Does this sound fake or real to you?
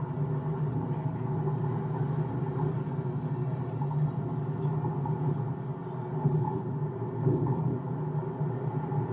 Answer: real